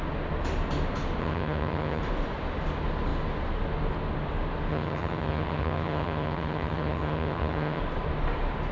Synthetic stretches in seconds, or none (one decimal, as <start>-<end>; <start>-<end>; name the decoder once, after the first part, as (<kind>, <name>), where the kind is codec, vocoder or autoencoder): 1.2-2.0 (vocoder, HiFi-GAN); 4.7-7.8